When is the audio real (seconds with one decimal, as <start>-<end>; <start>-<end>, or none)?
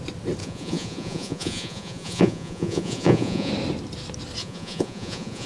0.0-0.4; 3.5-4.4